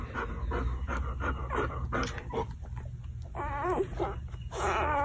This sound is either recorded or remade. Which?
recorded